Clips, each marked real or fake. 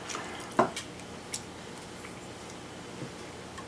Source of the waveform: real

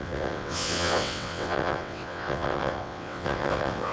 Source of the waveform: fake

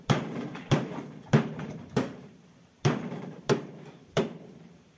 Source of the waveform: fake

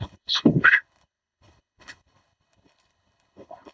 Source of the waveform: fake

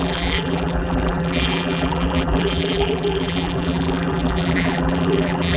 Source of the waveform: fake